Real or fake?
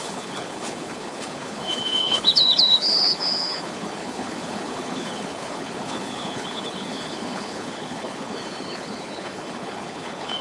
fake